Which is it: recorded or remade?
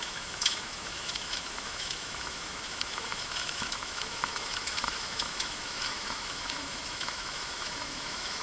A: remade